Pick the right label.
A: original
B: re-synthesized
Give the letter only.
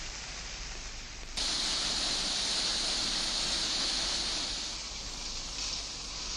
A